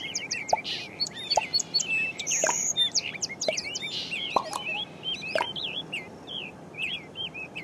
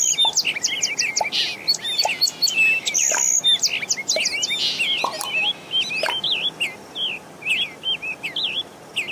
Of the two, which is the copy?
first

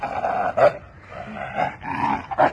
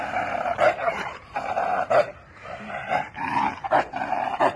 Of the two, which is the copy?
second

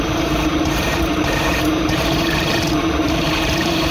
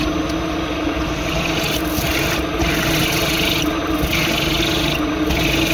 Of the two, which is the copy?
first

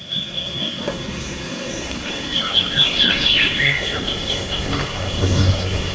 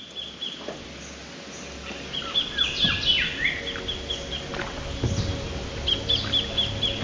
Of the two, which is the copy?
first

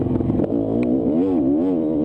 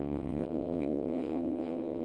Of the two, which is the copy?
second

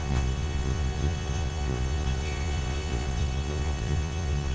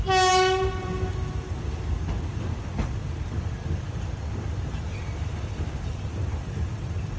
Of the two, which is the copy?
first